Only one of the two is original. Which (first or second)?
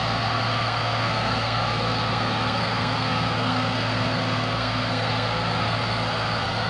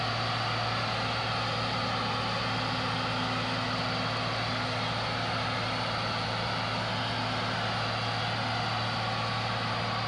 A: second